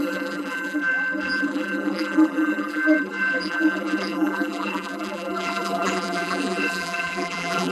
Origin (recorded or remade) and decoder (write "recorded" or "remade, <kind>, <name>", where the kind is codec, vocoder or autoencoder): remade, vocoder, BigVGAN v2